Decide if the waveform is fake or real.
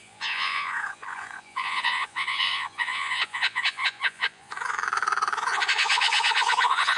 fake